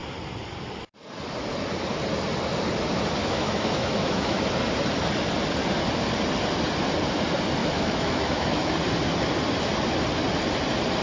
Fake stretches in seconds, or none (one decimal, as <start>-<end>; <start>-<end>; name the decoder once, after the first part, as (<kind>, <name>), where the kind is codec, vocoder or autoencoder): 3.2-4.4 (autoencoder, DAC-VAE); 7.6-8.7